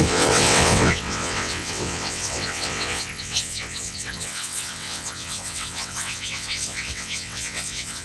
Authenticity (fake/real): fake